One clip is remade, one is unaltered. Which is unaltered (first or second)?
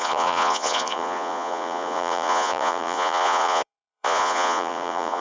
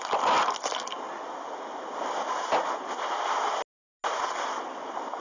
second